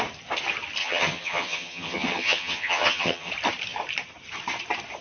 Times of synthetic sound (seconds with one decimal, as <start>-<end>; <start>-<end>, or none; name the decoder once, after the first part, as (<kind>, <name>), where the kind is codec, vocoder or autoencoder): 0.8-3.3 (vocoder, HiFi-GAN)